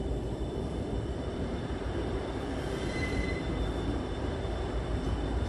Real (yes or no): no